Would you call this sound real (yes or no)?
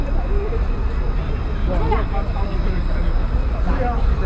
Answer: yes